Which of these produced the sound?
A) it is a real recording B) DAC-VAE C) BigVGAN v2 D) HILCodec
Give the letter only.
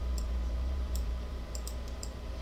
C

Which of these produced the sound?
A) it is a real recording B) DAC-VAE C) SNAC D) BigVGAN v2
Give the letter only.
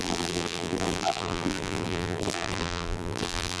D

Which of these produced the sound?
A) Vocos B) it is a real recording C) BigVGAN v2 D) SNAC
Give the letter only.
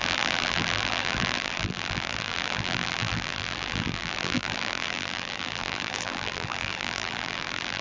C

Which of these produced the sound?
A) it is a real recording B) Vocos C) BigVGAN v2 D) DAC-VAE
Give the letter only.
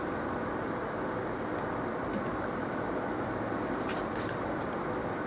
A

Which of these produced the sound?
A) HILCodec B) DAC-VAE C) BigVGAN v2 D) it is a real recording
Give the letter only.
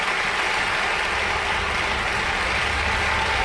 D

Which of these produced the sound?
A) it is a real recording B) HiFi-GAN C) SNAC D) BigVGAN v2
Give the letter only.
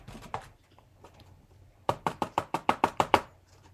D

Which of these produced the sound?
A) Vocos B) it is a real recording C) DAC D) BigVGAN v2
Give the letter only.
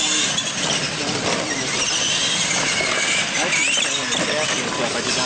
B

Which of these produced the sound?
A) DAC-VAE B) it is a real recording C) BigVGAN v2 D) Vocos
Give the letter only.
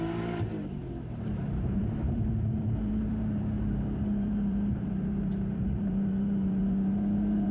C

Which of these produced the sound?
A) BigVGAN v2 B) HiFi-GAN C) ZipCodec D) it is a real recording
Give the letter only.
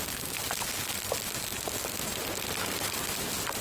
D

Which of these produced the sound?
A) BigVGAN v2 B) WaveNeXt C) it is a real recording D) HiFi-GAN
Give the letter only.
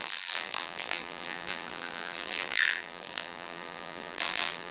A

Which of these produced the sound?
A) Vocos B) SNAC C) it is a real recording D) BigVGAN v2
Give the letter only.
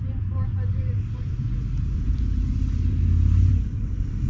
D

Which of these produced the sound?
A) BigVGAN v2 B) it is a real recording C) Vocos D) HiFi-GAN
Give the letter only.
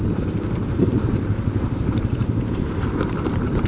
A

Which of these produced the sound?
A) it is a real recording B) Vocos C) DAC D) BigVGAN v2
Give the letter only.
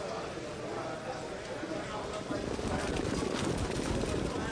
A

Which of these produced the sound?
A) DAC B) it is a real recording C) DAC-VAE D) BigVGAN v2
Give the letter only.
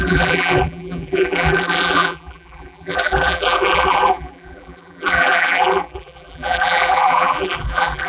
D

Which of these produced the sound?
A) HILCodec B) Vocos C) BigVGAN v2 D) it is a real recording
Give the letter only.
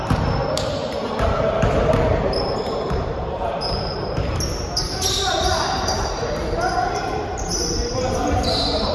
C